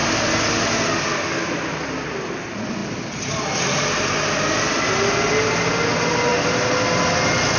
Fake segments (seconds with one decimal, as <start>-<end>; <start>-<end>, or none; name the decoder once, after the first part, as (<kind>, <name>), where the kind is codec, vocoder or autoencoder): none